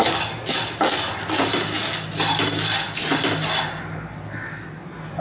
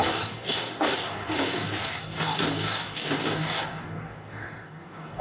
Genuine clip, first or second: first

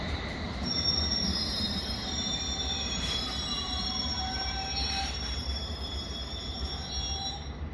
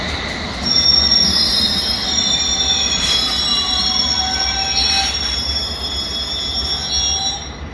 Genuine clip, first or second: second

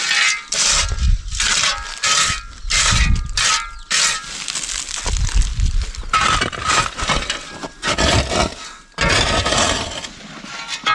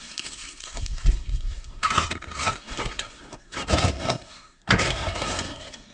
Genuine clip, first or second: first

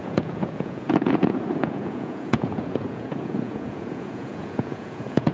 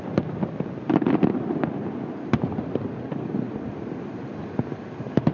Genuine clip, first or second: second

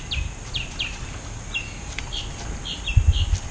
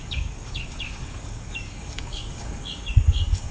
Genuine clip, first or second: first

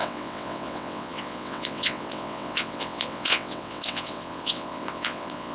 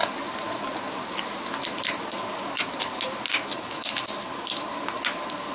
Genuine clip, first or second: second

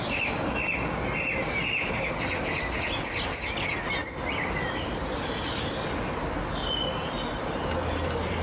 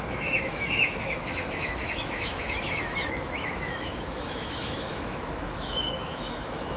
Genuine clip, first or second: first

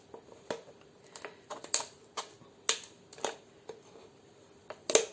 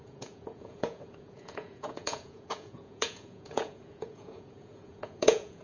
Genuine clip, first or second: first